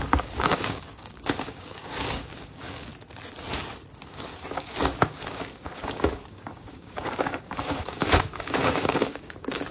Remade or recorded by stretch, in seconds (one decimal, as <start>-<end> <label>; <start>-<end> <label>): 0.0-2.9 remade; 2.9-4.1 recorded; 4.1-9.7 remade